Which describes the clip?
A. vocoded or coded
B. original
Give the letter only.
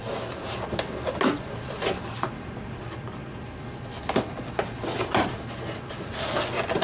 B